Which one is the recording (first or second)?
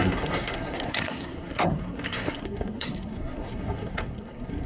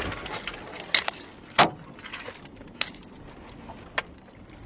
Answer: second